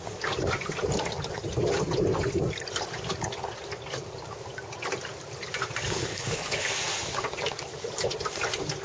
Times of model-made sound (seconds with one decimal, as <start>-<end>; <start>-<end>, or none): 6.1-6.7